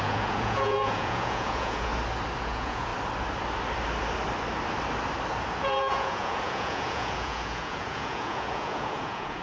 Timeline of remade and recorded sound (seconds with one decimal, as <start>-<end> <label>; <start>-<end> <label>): 0.0-1.9 remade; 1.9-2.4 recorded; 2.4-2.9 remade; 2.9-5.6 recorded; 5.6-9.4 remade